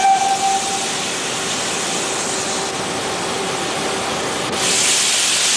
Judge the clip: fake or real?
real